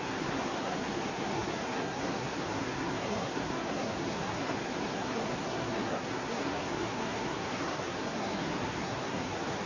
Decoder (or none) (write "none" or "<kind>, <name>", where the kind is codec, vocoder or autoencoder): codec, SNAC